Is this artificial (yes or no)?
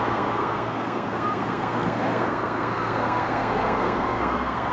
yes